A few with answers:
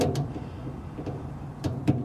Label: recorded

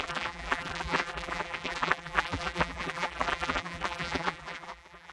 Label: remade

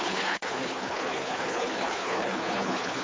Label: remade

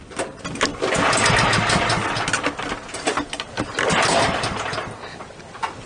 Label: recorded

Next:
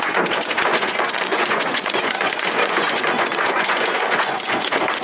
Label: remade